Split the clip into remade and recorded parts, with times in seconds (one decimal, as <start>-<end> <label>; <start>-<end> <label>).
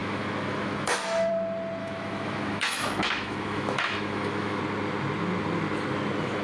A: 0.0-1.3 remade; 1.3-1.8 recorded; 1.8-4.6 remade; 4.6-6.4 recorded